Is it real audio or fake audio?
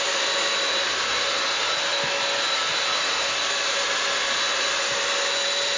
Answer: fake